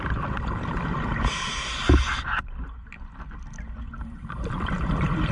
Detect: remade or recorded recorded